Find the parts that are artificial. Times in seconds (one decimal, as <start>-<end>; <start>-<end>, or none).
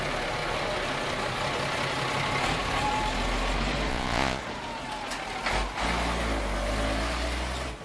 3.9-4.4